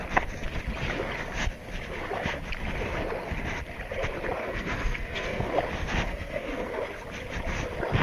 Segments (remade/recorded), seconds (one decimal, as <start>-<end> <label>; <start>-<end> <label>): 0.0-4.4 recorded; 4.4-5.5 remade; 5.5-6.1 recorded; 6.1-6.8 remade; 6.8-8.0 recorded

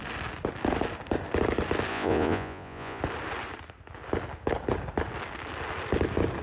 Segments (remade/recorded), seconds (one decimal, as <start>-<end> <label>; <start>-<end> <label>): 0.0-1.9 recorded; 1.9-3.0 remade; 3.0-6.4 recorded